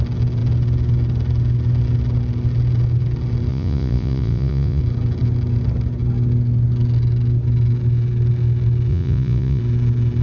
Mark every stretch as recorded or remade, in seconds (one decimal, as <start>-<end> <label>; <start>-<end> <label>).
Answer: 0.0-3.5 recorded; 3.5-4.8 remade; 4.8-8.9 recorded; 8.9-9.6 remade; 9.6-10.2 recorded